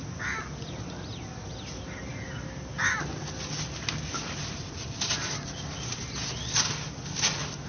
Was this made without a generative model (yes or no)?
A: yes